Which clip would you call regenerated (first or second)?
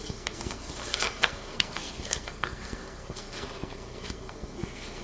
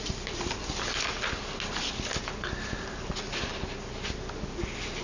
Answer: first